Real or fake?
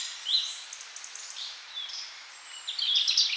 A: real